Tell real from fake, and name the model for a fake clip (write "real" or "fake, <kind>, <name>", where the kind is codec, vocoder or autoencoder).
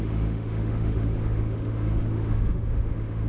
fake, autoencoder, DAC-VAE